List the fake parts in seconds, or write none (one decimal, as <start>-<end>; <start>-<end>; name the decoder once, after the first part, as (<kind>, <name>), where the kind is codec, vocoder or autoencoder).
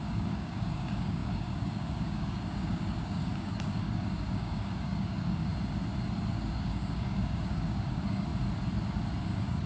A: 0.0-5.5 (codec, DAC); 6.3-8.3; 9.1-9.7